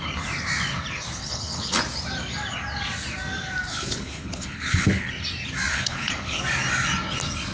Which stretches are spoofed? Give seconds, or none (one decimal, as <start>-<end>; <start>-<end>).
1.2-1.8; 3.7-5.1; 5.7-6.4